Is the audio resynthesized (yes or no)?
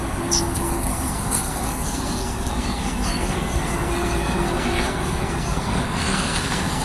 yes